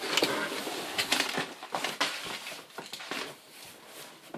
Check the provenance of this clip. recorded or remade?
recorded